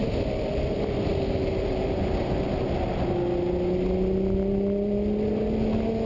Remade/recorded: recorded